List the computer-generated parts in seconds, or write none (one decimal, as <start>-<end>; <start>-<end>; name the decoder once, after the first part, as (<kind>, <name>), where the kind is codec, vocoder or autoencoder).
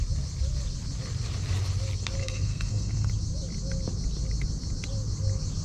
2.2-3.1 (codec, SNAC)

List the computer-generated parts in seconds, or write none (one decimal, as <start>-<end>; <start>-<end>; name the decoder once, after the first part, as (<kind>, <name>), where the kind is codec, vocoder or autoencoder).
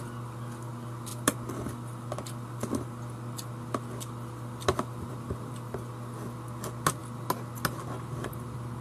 none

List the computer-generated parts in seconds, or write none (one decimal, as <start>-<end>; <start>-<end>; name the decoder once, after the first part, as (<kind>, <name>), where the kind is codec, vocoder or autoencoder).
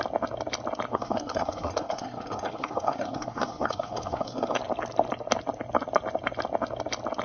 0.9-4.6 (codec, SNAC)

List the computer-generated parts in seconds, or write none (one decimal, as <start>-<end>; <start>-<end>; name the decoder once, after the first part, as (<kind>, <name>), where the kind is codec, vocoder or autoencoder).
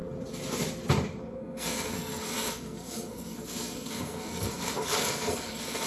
1.2-5.9 (codec, SNAC)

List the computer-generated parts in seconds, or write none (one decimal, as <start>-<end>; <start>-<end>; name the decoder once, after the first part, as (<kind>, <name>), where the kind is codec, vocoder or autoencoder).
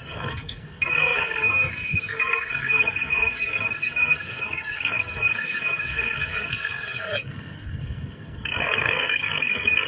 0.0-9.9 (codec, SNAC)